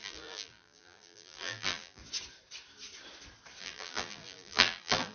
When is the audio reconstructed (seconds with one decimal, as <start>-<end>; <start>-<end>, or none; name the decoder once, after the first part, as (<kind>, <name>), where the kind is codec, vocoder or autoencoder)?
0.0-2.0 (vocoder, BigVGAN v2); 3.6-5.1